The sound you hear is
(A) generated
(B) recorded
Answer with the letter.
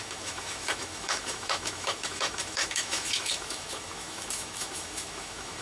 A